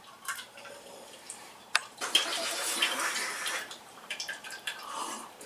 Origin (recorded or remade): remade